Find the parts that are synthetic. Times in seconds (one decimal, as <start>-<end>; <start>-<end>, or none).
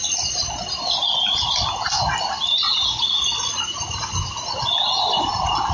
none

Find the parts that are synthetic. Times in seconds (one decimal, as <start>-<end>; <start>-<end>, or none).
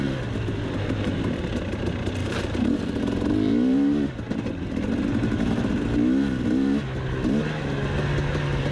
2.2-2.8; 5.1-5.7